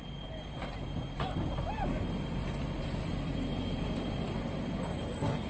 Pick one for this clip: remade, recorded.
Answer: recorded